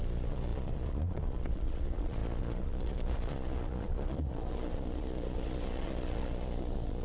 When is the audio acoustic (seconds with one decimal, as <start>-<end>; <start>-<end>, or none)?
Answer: none